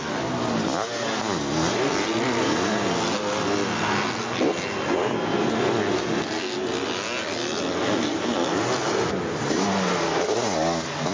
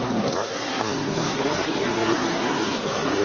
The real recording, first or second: first